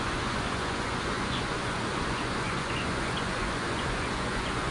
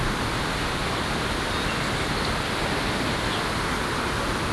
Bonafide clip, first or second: second